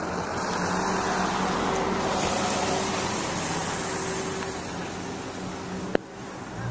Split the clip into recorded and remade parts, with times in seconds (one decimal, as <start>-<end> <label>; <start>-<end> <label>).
0.0-6.7 recorded